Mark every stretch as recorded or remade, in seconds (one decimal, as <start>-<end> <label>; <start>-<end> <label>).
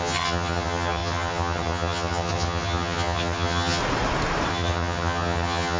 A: 0.0-3.8 remade; 3.8-4.5 recorded; 4.5-5.8 remade